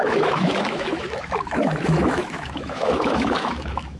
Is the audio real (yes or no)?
no